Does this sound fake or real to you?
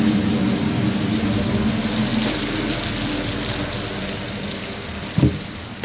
real